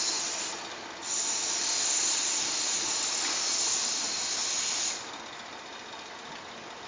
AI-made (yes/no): no